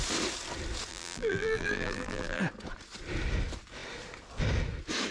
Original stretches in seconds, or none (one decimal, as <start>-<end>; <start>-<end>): 0.0-0.9; 2.4-5.1